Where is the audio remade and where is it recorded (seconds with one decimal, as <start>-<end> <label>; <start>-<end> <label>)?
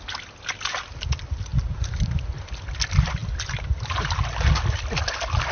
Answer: 0.0-5.5 recorded